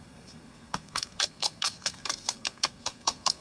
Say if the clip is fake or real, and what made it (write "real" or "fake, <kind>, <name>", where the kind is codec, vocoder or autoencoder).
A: fake, codec, SNAC